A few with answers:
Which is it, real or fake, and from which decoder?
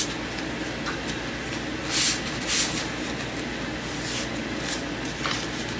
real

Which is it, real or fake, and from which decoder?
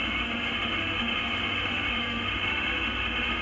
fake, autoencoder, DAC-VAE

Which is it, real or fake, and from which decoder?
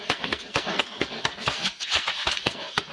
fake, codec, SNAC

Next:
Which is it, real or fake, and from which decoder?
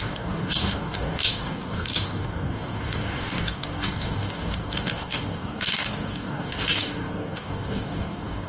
fake, codec, DAC